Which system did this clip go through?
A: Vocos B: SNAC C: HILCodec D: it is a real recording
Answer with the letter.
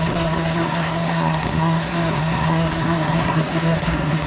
B